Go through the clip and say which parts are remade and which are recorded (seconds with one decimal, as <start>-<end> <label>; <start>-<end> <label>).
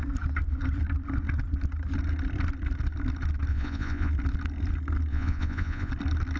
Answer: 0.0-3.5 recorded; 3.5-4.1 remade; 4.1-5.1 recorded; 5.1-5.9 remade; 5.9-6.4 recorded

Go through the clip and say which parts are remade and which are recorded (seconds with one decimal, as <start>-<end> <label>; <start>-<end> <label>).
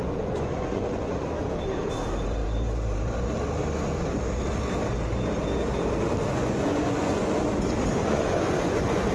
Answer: 0.0-1.3 remade; 1.3-6.3 recorded; 6.3-7.3 remade; 7.3-8.0 recorded; 8.0-9.1 remade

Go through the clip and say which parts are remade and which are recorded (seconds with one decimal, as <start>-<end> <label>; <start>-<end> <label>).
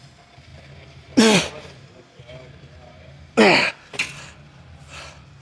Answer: 0.0-5.4 recorded